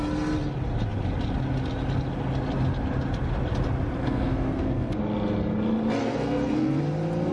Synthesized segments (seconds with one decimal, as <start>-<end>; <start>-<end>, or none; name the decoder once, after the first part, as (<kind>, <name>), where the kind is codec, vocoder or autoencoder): 4.0-5.0 (codec, SNAC); 6.0-6.8